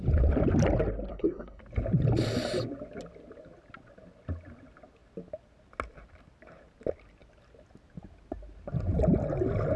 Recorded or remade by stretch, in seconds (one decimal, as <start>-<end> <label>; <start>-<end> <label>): 0.0-1.1 recorded; 1.1-1.6 remade; 1.6-9.8 recorded